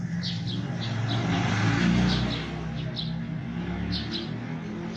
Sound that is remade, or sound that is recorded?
recorded